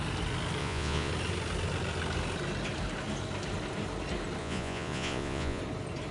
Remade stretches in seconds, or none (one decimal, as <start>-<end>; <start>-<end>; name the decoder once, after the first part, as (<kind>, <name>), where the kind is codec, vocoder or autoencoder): 0.6-1.1 (vocoder, Vocos); 4.4-5.6